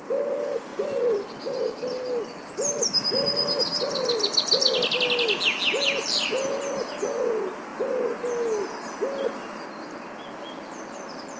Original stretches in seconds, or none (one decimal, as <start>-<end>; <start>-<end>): 0.0-11.4